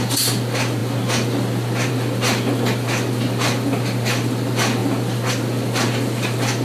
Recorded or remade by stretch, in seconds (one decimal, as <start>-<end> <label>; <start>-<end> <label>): 0.0-6.6 recorded